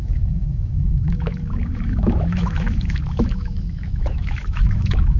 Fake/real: fake